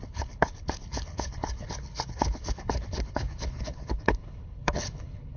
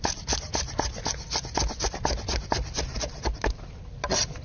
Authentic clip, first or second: second